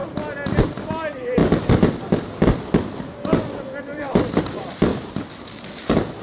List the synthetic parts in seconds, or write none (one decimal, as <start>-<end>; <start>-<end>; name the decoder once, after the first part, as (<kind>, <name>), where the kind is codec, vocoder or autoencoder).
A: 0.9-6.2 (vocoder, BigVGAN v2)